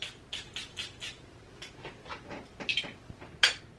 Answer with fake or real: real